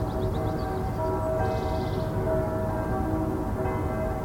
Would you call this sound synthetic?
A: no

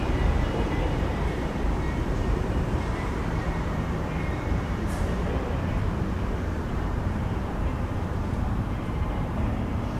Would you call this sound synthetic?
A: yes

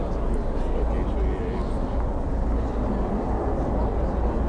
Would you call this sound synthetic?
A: no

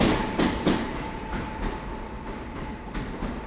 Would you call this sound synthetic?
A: no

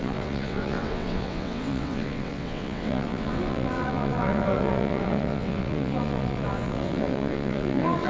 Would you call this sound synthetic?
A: yes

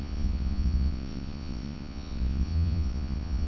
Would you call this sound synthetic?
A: yes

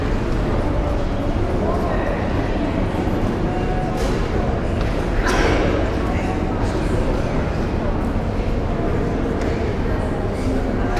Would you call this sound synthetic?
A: no